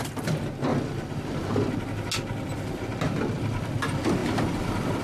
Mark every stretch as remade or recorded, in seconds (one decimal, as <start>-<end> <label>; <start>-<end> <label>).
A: 0.0-5.0 recorded

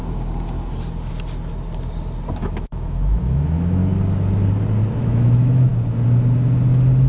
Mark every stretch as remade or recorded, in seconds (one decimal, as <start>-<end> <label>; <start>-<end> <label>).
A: 0.0-2.3 recorded; 2.3-3.8 remade; 3.8-5.0 recorded; 5.0-5.7 remade; 5.7-7.1 recorded

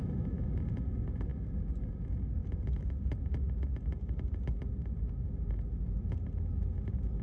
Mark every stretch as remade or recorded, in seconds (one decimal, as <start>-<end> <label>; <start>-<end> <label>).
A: 0.0-0.6 remade; 0.6-7.2 recorded

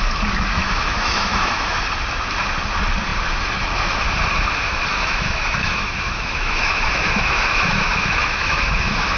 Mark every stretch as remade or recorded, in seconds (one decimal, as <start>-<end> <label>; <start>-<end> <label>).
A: 0.0-0.6 recorded; 0.6-1.8 remade; 1.8-4.9 recorded; 4.9-9.2 remade